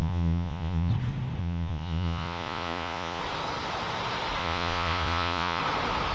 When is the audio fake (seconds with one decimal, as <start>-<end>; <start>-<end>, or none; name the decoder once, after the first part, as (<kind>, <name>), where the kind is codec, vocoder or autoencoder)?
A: 0.0-0.9 (vocoder, Vocos); 1.4-3.2; 4.4-5.6